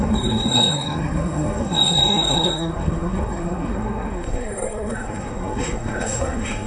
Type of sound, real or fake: fake